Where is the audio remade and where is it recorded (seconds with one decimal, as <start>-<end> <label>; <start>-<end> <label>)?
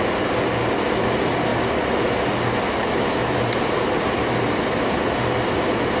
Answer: 0.0-6.0 recorded